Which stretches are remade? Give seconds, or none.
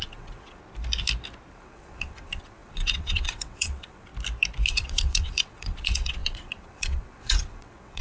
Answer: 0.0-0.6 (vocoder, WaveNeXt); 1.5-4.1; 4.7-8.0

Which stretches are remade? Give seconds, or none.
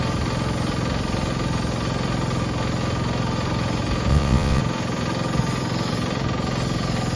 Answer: 4.1-4.6 (vocoder, WaveNeXt)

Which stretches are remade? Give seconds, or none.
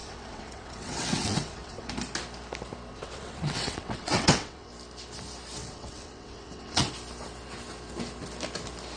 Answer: 0.0-1.9 (vocoder, WaveNeXt); 2.9-4.7; 5.6-6.9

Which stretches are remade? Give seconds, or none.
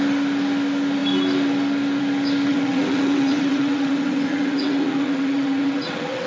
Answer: 2.5-6.3 (vocoder, WaveNeXt)